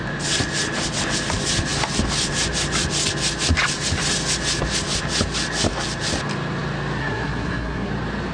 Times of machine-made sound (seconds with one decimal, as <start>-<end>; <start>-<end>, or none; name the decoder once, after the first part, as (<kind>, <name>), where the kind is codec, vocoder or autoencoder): 7.0-7.9 (codec, SNAC)